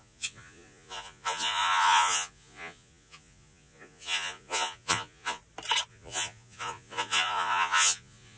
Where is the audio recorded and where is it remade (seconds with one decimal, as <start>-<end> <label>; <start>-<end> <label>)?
0.0-5.4 remade; 5.4-5.9 recorded; 5.9-8.4 remade